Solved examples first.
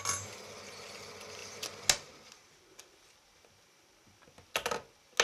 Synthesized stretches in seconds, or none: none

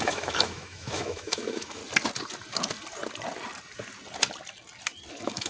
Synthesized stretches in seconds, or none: 0.0-1.8 (autoencoder, DAC-VAE); 5.1-5.5